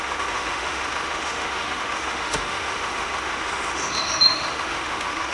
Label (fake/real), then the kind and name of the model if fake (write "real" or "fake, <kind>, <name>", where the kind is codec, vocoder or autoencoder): fake, autoencoder, DAC-VAE